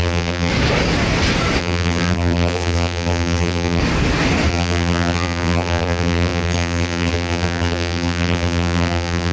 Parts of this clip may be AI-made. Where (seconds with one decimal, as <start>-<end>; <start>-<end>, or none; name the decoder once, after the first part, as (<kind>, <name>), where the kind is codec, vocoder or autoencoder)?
0.0-0.5 (vocoder, BigVGAN v2); 1.6-3.8; 4.5-9.3